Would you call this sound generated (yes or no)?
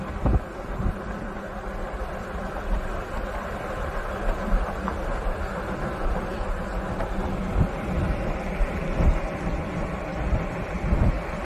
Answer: no